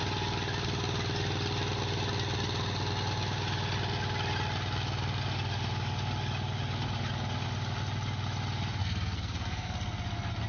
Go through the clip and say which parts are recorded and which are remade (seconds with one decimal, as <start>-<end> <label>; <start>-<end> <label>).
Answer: 0.0-8.8 recorded; 8.8-9.7 remade; 9.7-10.5 recorded